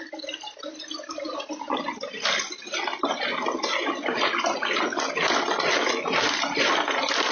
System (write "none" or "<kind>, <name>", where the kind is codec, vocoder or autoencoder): none